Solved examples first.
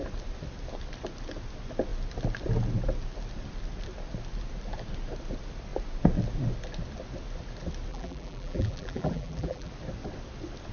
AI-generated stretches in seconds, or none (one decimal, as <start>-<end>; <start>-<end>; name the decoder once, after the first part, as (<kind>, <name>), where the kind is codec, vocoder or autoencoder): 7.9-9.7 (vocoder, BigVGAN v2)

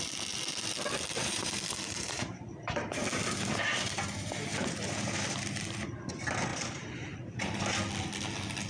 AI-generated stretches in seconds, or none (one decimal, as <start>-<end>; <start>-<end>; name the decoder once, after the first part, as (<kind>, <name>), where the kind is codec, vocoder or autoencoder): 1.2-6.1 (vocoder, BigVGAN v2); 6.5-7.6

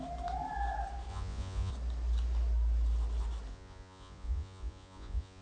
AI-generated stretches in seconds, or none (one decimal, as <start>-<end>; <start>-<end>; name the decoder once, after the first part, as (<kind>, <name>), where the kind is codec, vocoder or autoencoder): 1.1-1.7 (vocoder, Vocos); 3.5-5.4

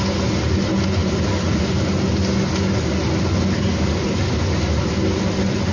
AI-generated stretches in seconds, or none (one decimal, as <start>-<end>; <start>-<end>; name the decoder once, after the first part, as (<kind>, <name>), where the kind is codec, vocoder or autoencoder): 1.0-1.6 (vocoder, BigVGAN v2)

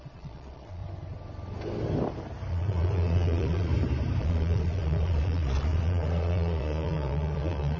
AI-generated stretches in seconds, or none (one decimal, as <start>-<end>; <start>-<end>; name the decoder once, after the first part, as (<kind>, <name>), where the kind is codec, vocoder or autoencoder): 0.0-0.8 (vocoder, Vocos); 2.5-3.7; 4.2-7.8